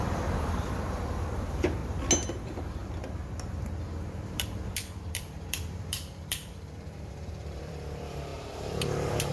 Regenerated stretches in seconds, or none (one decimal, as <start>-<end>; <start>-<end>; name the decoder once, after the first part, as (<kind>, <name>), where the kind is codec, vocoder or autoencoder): 0.0-1.8 (vocoder, BigVGAN v2); 2.4-2.8; 4.3-8.3